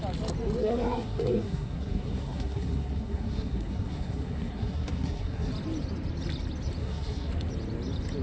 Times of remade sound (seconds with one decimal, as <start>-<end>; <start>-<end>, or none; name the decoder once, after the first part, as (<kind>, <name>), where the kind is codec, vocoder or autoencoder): 0.6-5.5 (codec, SNAC); 6.8-7.3